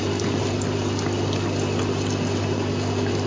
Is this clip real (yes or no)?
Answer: yes